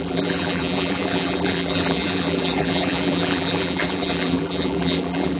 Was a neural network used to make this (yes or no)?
yes